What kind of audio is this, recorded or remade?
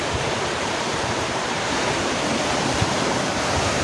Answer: remade